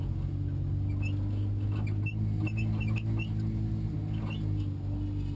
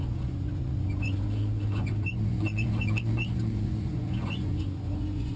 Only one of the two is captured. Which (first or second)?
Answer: first